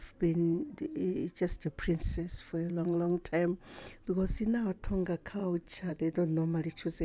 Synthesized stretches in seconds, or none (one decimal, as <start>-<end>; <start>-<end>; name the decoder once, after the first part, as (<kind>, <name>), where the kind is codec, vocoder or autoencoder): 2.1-3.6 (vocoder, Vocos); 5.4-5.9